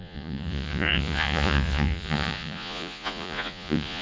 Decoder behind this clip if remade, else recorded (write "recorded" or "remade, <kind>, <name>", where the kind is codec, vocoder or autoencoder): remade, vocoder, Vocos